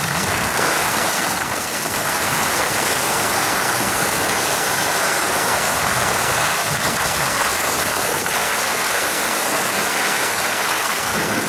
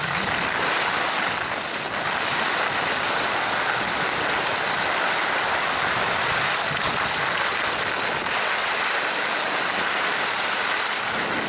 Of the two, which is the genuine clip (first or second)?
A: second